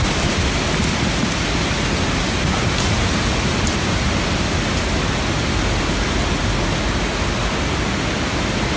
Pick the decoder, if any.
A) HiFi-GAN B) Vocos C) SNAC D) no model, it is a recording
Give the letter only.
D